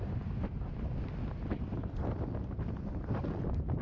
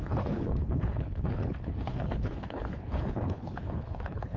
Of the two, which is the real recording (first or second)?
first